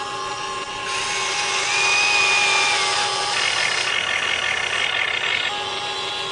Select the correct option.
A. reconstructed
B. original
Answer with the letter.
B